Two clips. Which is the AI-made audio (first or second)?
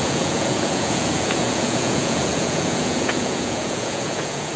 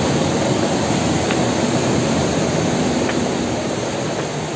first